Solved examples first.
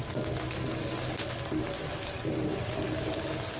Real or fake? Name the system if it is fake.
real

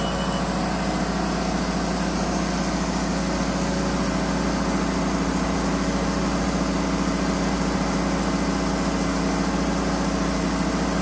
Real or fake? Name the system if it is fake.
real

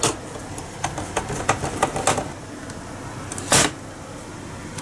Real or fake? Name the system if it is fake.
real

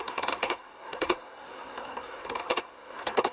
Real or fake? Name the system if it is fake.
fake, codec, SNAC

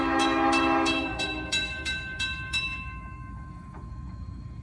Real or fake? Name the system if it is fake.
fake, autoencoder, DAC-VAE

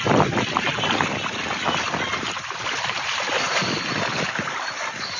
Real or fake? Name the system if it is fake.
real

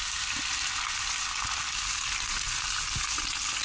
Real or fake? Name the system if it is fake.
real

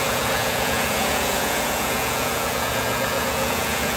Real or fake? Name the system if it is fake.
fake, vocoder, Vocos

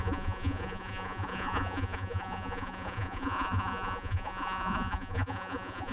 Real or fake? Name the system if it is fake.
fake, vocoder, Vocos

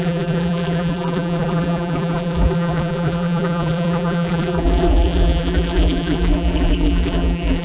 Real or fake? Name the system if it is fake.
fake, vocoder, BigVGAN v2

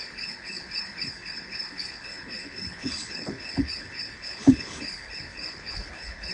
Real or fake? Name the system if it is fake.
fake, codec, HILCodec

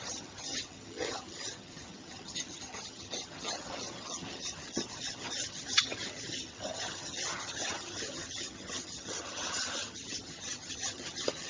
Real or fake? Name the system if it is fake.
fake, vocoder, HiFi-GAN